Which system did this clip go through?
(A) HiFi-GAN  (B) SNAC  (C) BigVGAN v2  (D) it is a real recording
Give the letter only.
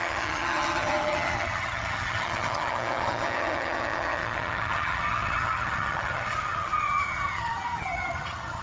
A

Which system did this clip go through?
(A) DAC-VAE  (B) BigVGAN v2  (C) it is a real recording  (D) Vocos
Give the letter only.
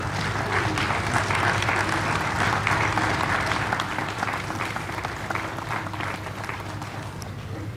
C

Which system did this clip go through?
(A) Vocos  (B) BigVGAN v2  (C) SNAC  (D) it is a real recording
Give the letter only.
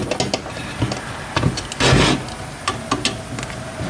D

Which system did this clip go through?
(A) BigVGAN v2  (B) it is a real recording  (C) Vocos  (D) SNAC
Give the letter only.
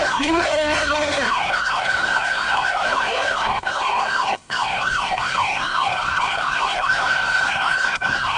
D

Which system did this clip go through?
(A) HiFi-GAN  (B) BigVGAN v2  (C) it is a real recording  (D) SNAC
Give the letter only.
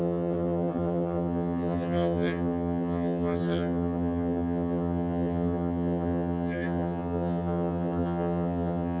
A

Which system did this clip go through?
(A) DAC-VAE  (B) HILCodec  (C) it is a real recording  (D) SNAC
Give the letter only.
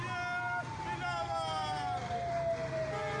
C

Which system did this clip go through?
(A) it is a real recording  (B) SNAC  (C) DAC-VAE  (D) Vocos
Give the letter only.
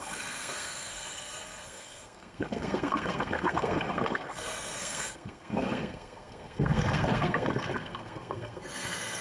B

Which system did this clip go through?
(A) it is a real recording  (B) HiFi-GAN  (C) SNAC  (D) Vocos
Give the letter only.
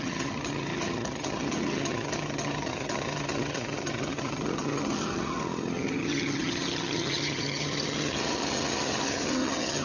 B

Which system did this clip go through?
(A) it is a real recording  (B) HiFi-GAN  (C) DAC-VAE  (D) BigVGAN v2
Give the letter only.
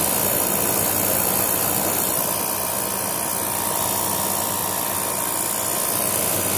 A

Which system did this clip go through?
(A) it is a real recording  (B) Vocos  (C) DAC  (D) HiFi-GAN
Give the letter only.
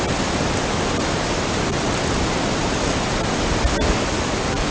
A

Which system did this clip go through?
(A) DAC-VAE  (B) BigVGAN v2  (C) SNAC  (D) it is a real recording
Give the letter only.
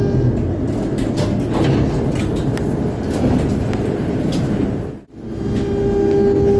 D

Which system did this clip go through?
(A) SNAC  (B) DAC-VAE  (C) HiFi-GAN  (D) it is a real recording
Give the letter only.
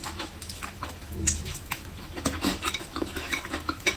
B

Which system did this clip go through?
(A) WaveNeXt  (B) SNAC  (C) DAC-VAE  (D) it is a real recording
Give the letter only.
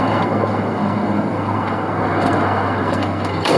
B